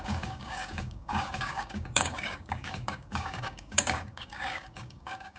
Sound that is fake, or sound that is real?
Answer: fake